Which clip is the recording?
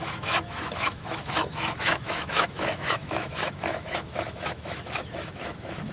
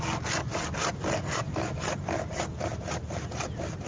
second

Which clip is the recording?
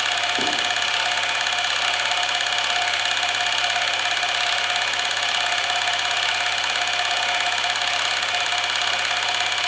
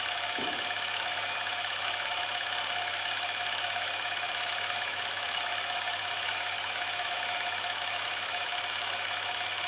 first